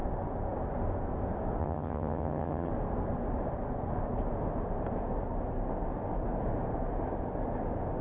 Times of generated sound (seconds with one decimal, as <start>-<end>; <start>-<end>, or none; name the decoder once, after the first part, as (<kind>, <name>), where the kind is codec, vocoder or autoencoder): 1.6-2.7 (vocoder, HiFi-GAN)